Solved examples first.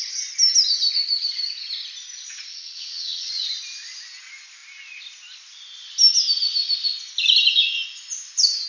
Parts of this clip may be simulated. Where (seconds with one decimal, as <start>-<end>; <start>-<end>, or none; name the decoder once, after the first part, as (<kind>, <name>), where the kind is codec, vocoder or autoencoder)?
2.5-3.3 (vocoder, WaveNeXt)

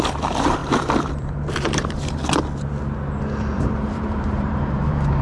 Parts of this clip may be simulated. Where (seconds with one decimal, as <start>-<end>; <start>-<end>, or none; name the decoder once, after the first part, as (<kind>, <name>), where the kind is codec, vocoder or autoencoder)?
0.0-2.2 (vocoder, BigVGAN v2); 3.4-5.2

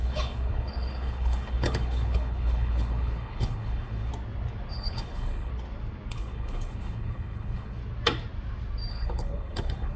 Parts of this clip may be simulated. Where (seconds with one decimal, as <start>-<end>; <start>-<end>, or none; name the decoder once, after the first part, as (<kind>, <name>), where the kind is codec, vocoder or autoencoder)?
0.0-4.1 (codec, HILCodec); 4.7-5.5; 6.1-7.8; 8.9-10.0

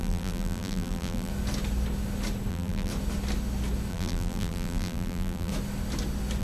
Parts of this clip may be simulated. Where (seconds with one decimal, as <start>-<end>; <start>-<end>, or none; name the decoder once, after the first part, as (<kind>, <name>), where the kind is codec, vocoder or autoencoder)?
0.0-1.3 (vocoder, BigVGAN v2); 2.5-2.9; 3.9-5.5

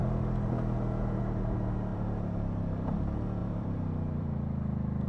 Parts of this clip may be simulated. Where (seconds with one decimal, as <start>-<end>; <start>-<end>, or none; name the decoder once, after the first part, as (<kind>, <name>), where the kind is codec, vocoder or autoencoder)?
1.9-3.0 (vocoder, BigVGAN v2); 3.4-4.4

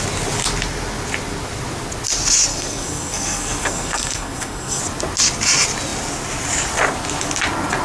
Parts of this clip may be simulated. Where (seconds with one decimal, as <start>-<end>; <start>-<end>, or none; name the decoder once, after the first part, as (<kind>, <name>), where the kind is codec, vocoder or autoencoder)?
2.5-4.8 (codec, SNAC)

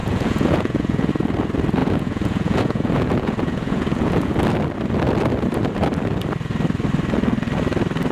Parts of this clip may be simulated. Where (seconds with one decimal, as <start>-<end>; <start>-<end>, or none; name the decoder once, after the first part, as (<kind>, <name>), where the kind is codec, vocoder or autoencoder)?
0.0-1.1 (vocoder, Vocos); 1.8-4.3